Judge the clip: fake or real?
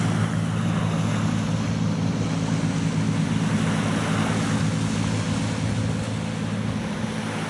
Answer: real